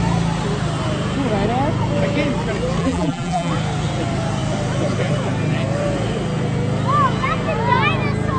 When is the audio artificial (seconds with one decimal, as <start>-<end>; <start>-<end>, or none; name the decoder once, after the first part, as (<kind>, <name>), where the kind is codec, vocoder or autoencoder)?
2.8-3.5 (vocoder, BigVGAN v2)